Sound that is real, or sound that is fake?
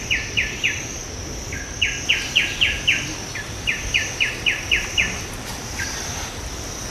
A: real